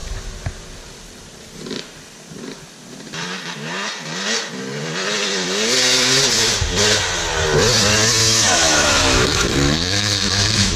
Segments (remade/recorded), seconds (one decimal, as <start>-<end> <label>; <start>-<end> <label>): 0.0-8.2 recorded; 8.2-10.8 remade